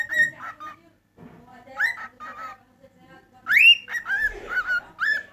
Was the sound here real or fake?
real